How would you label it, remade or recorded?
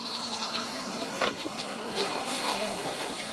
remade